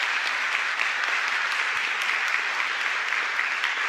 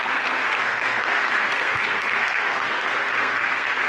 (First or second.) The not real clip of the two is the second